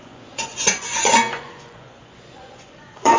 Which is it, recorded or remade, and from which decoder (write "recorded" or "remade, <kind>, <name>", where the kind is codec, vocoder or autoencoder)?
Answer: remade, vocoder, Vocos